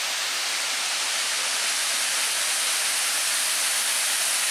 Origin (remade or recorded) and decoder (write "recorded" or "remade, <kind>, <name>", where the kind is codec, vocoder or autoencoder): recorded